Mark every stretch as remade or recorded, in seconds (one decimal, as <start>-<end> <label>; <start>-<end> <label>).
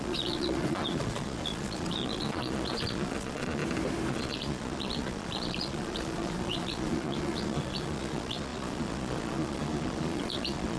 0.0-3.6 remade; 3.6-4.1 recorded; 4.1-10.8 remade